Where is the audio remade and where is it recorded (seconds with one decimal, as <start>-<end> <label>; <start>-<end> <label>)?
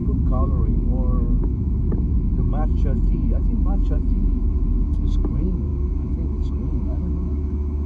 0.0-2.3 remade; 2.3-3.9 recorded; 3.9-7.9 remade